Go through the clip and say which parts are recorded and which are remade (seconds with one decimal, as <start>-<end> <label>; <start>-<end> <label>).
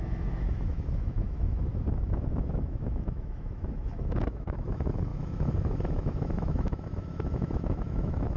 0.0-8.4 remade